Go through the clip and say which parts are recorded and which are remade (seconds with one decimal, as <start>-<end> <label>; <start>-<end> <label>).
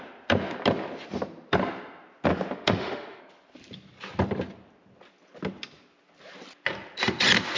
0.0-2.3 recorded; 2.3-3.2 remade; 3.2-7.6 recorded